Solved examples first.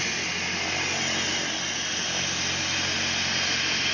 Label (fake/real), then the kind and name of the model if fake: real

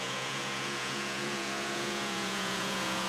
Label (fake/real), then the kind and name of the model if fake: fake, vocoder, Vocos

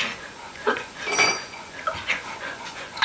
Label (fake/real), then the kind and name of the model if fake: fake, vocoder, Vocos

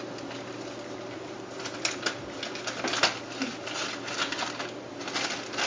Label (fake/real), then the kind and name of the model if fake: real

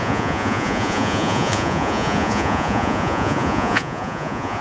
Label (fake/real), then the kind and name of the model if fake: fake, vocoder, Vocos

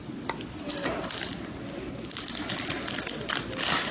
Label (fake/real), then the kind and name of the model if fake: real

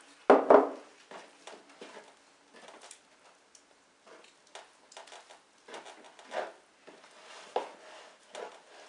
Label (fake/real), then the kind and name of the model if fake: real